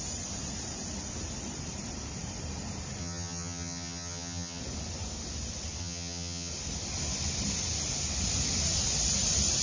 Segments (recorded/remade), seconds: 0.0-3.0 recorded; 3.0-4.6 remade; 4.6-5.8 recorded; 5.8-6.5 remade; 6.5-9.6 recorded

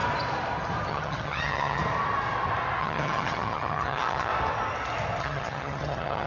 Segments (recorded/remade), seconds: 0.0-0.9 recorded; 0.9-1.8 remade; 1.8-2.8 recorded; 2.8-4.3 remade; 4.3-5.2 recorded; 5.2-6.3 remade

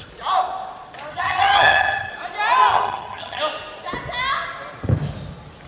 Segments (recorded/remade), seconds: 0.0-1.1 recorded; 1.1-2.1 remade; 2.1-2.7 recorded; 2.7-3.4 remade; 3.4-5.7 recorded

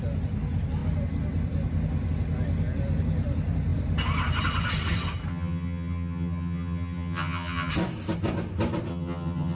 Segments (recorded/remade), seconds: 0.0-5.3 recorded; 5.3-7.7 remade; 7.7-8.9 recorded; 8.9-9.6 remade

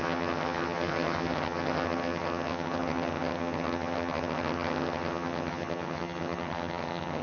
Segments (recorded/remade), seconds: 0.0-7.2 remade

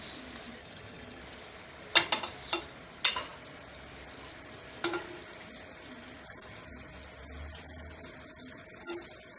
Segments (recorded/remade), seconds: 0.0-0.6 recorded; 0.6-1.2 remade; 1.2-9.4 recorded

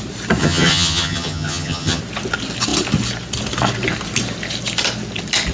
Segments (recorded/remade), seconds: 0.0-0.4 recorded; 0.4-2.0 remade; 2.0-5.5 recorded